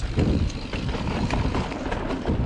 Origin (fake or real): fake